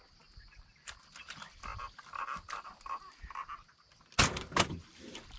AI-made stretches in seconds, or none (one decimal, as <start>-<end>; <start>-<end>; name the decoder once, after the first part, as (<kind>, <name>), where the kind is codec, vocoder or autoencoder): none